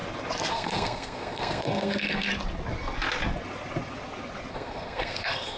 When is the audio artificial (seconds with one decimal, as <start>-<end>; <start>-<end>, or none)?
0.5-2.3; 4.5-5.6